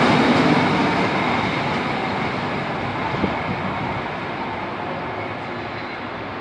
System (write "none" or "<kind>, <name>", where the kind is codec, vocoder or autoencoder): none